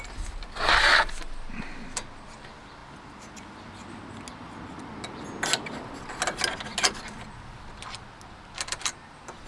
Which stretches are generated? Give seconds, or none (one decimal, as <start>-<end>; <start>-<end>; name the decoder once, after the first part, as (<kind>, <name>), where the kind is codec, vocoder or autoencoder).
none